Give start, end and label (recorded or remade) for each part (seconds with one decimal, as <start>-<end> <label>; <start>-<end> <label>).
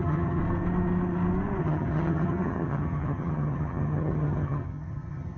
0.0-0.4 remade; 0.4-1.6 recorded; 1.6-5.4 remade